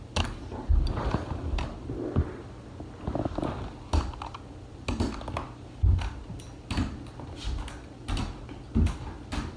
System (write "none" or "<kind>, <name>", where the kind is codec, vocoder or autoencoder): none